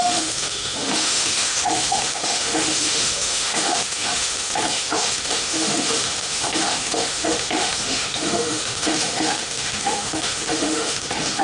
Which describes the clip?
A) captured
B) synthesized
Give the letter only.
B